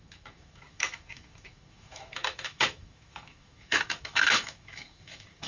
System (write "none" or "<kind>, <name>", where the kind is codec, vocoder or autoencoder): autoencoder, DAC-VAE